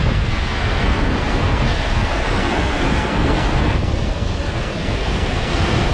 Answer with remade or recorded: remade